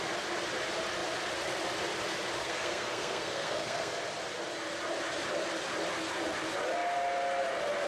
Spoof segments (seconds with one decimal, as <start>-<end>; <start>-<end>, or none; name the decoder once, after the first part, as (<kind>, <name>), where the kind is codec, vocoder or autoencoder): 2.4-4.0 (codec, SNAC)